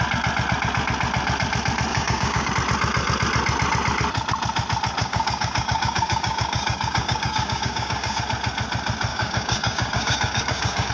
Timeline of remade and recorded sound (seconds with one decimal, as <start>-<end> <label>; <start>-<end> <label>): 0.0-1.9 recorded; 1.9-2.5 remade; 2.5-5.0 recorded; 5.0-8.2 remade; 8.2-9.1 recorded; 9.1-10.9 remade